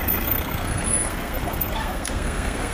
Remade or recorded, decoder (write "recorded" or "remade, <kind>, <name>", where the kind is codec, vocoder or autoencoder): remade, codec, SNAC